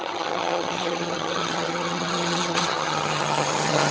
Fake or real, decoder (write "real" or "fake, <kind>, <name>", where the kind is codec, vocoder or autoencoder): fake, vocoder, HiFi-GAN